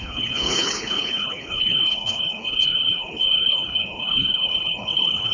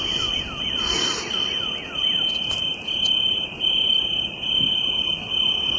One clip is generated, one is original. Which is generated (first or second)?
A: first